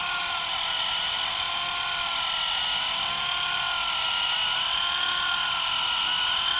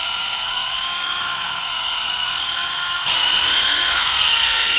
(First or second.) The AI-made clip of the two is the second